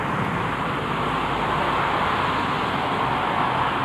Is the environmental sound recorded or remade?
recorded